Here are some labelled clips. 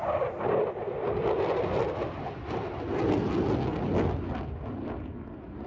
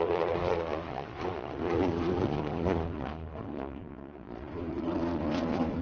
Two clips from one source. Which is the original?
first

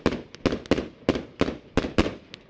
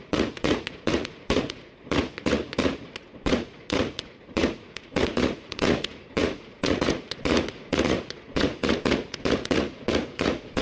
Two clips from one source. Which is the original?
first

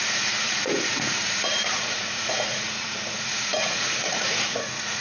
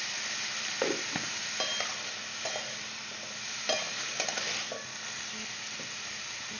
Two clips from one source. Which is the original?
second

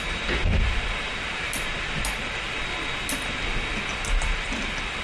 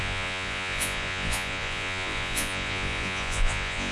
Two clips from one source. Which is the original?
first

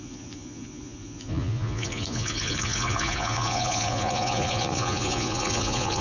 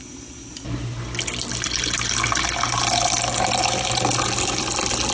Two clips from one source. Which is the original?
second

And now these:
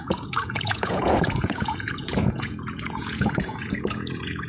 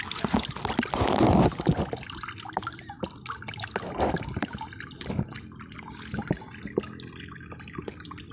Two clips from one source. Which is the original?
second